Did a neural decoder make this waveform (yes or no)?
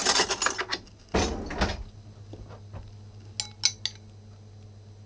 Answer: no